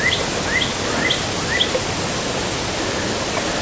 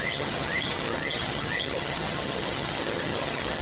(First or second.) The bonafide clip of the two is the first